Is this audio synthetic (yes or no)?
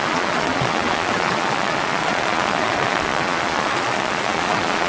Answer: yes